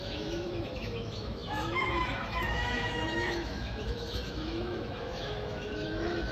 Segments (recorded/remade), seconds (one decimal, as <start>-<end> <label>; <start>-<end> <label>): 0.0-6.3 remade